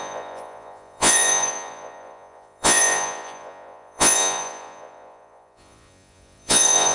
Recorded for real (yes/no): no